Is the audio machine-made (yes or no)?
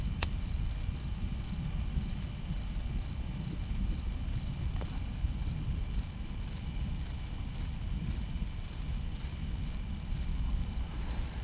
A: no